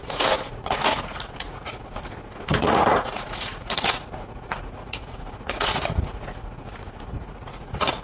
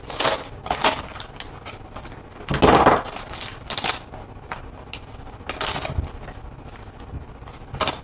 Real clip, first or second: second